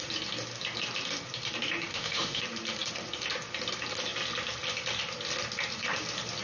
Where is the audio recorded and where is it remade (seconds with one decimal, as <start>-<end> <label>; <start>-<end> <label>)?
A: 0.0-1.9 recorded; 1.9-2.4 remade; 2.4-6.4 recorded